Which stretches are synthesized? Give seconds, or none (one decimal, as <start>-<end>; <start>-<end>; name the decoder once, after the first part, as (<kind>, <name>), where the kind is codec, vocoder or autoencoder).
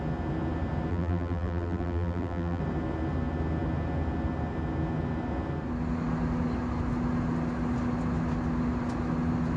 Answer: 0.9-2.6 (vocoder, BigVGAN v2)